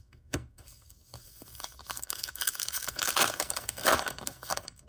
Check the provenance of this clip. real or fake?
fake